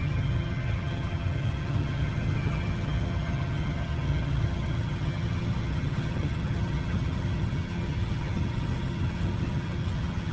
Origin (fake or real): fake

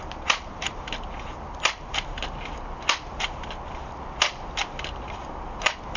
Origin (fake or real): real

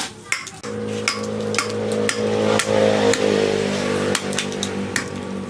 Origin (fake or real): real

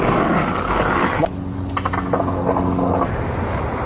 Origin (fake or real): real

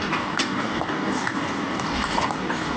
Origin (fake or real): fake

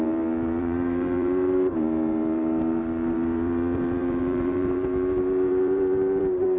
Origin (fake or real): fake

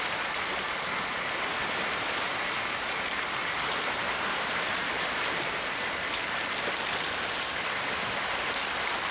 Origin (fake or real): real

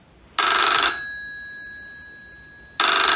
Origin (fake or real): real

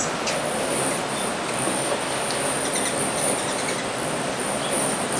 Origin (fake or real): real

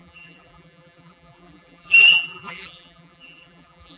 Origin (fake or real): fake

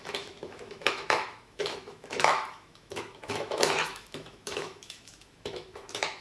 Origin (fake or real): fake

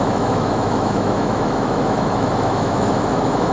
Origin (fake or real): fake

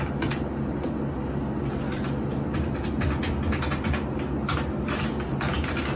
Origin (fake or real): real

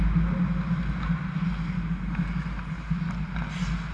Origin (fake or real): real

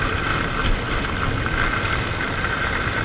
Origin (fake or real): real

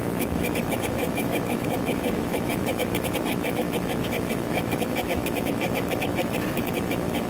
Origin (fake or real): fake